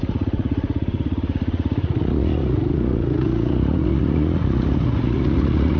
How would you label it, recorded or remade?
remade